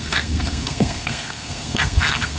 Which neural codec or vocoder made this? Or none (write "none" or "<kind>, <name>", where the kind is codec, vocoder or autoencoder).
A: codec, SNAC